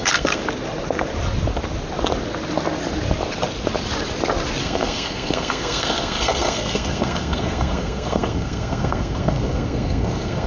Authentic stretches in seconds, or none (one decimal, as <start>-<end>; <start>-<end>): 0.4-4.6